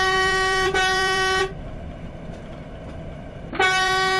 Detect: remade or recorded remade